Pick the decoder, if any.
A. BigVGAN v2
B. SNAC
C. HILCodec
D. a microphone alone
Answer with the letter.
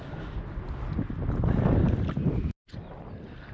D